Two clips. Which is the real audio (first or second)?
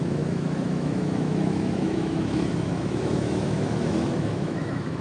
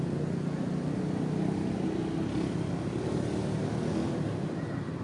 second